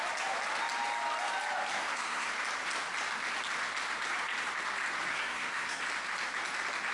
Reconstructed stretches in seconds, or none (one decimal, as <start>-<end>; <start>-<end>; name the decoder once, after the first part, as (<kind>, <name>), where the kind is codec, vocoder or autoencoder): 1.8-2.3 (codec, SNAC); 5.1-5.8